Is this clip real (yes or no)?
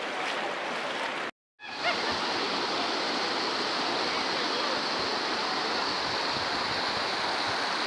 yes